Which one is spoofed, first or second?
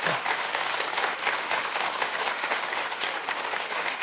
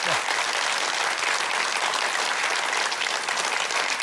first